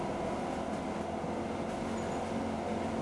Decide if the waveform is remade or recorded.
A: recorded